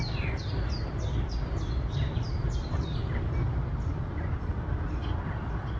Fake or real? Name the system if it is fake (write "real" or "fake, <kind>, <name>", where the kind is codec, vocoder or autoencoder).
real